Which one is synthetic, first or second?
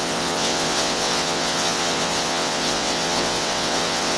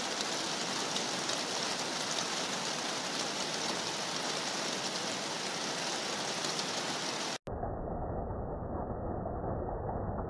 first